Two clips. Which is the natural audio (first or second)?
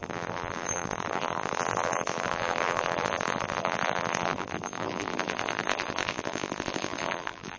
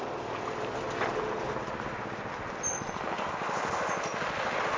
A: second